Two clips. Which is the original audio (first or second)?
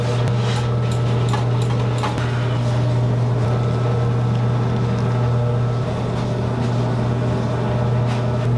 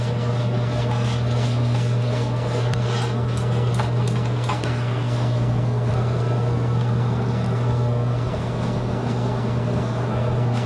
first